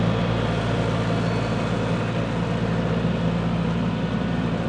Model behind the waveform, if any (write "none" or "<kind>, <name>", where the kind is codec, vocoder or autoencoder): none